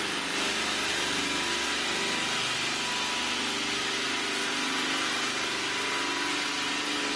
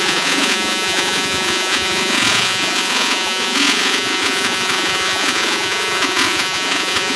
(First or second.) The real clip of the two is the first